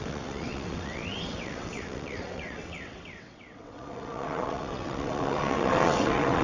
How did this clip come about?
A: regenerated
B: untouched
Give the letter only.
A